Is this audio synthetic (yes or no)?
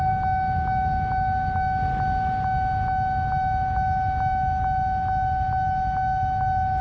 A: no